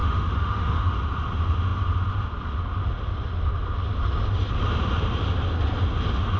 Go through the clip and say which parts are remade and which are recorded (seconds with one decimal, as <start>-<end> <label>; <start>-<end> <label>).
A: 0.0-0.9 remade; 0.9-6.4 recorded